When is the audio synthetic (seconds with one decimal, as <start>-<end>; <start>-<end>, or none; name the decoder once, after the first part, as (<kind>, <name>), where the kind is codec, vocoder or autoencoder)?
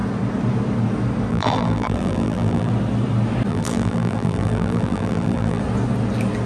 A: 1.3-2.7 (vocoder, BigVGAN v2); 3.5-5.6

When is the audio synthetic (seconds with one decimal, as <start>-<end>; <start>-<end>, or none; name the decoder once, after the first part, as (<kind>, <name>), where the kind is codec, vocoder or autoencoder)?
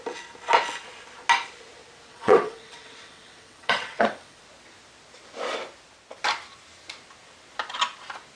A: 2.1-4.4 (vocoder, WaveNeXt)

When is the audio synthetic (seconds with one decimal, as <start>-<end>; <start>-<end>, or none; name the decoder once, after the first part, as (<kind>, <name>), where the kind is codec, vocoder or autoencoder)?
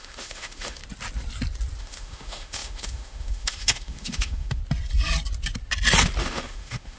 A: 0.0-0.8 (autoencoder, DAC-VAE); 1.8-4.6; 6.2-7.0